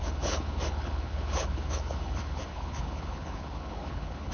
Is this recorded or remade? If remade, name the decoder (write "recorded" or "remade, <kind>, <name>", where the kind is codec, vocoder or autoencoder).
remade, codec, HILCodec